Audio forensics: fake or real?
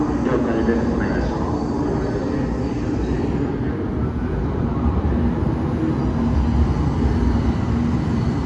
real